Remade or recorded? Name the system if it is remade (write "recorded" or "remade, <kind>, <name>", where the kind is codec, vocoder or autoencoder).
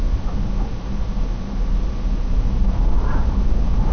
recorded